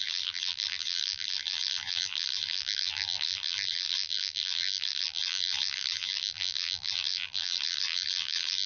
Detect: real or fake fake